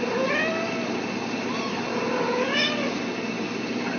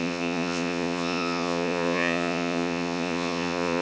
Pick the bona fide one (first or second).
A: first